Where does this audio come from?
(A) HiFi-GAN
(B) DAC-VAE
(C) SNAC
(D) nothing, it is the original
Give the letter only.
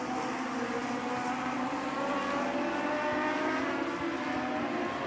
D